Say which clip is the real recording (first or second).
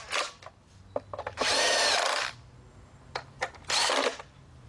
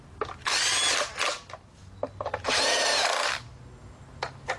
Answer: second